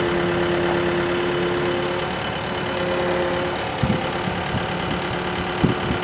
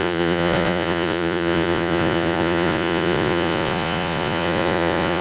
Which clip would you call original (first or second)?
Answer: first